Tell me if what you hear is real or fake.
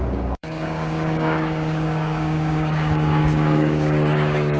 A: fake